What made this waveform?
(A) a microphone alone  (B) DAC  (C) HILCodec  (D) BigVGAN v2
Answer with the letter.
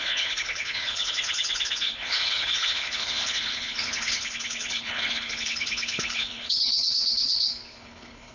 C